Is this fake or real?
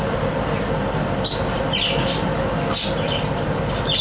real